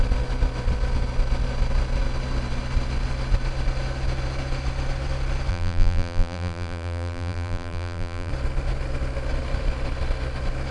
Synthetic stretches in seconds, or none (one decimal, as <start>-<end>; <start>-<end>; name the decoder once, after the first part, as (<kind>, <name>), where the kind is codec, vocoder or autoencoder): 5.5-8.3 (vocoder, BigVGAN v2)